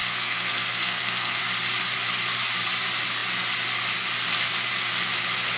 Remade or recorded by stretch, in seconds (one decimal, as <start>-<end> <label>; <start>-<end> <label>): 0.0-1.4 remade; 1.4-5.6 recorded